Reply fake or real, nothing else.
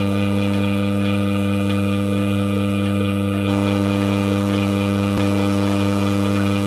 fake